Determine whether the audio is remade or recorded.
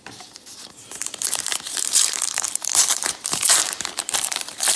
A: remade